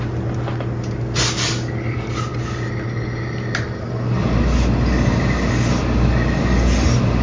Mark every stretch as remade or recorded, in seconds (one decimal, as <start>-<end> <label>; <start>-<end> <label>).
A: 0.0-7.2 recorded